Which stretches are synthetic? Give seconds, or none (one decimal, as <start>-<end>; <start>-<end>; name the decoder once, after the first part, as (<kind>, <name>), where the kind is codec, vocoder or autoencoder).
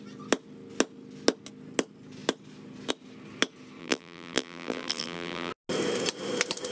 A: 3.8-5.5 (vocoder, BigVGAN v2)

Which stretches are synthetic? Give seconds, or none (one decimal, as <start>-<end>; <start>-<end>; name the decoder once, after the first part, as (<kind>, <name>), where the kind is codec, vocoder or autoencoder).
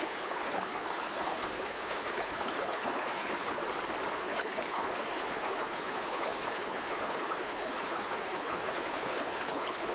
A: 0.0-3.6 (codec, HILCodec); 4.1-9.9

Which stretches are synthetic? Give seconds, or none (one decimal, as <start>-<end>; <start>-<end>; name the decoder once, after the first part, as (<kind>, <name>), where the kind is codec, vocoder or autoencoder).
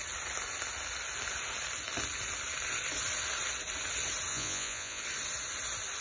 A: 4.3-5.0 (vocoder, Vocos)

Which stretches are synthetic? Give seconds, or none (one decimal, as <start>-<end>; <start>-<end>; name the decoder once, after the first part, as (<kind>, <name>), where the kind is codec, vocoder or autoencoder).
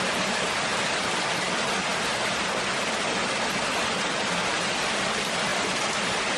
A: 0.7-1.3 (vocoder, BigVGAN v2); 5.5-6.4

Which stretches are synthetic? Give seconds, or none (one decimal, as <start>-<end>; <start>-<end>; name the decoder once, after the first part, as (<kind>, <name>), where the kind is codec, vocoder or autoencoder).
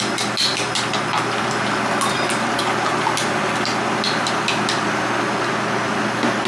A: none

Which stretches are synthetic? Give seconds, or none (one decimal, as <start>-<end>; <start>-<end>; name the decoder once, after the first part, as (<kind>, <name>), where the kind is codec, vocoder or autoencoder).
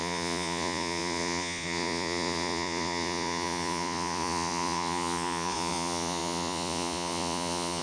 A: 0.0-7.8 (vocoder, Vocos)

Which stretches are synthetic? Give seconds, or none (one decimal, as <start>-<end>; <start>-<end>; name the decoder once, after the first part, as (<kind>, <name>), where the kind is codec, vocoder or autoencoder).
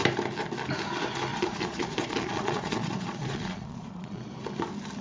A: 1.3-4.3 (vocoder, Vocos)